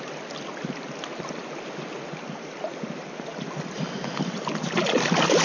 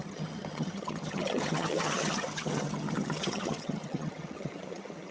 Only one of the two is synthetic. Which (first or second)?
second